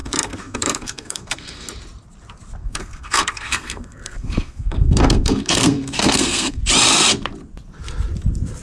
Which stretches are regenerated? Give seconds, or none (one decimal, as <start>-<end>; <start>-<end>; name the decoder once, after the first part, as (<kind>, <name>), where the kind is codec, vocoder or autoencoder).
0.0-1.7 (codec, SNAC); 2.6-6.6